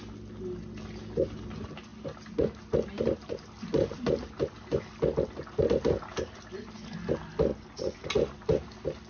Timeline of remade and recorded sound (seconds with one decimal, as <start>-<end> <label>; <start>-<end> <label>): 0.0-7.5 recorded; 7.5-8.0 remade; 8.0-9.1 recorded